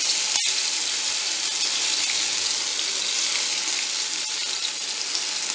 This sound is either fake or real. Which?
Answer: real